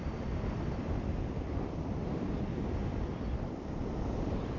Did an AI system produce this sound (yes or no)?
yes